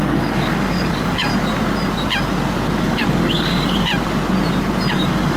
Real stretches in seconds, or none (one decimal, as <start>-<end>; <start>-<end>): 1.3-2.8; 3.9-4.9